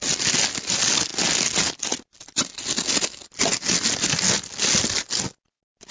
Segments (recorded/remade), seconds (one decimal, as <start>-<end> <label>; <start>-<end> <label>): 0.0-5.9 recorded